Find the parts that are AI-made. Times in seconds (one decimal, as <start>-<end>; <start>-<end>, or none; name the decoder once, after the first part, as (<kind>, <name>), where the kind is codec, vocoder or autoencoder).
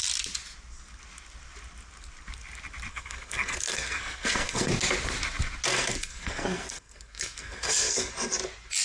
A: 2.9-4.7 (codec, SNAC); 5.7-8.1